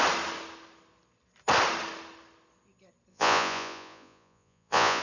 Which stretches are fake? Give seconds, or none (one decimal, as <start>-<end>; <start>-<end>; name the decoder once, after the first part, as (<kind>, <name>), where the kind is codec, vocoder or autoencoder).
3.1-5.0 (vocoder, Vocos)